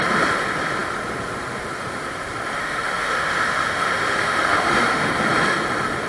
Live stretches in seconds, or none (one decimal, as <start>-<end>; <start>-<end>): 0.0-2.6; 5.1-6.1